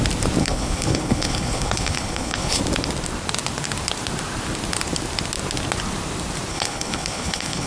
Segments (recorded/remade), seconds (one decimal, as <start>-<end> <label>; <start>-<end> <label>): 0.0-0.4 recorded; 0.4-2.6 remade; 2.6-6.5 recorded; 6.5-7.7 remade